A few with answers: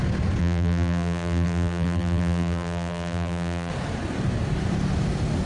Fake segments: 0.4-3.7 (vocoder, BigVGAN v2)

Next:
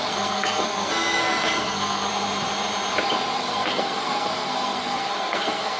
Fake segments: 0.0-2.1 (codec, SNAC); 3.4-5.8

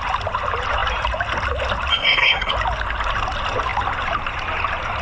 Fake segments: 1.9-2.5 (codec, SNAC)

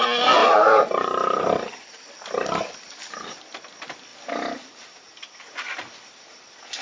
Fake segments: 0.4-0.9 (vocoder, BigVGAN v2); 4.1-6.8

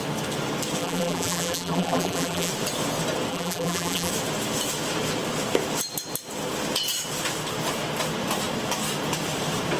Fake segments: 0.8-2.5 (vocoder, BigVGAN v2); 3.3-4.1

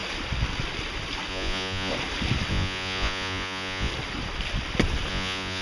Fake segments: 1.3-1.9 (vocoder, Vocos); 2.5-3.9; 5.1-5.6

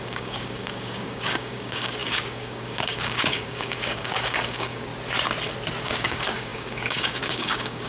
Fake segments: 0.0-4.9 (codec, DAC); 5.8-7.9

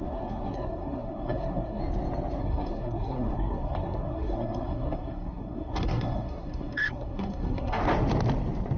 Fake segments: 0.0-1.8 (codec, SNAC); 2.4-7.8